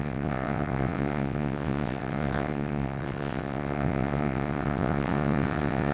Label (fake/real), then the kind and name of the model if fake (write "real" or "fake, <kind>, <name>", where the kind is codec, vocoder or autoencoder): fake, vocoder, WaveNeXt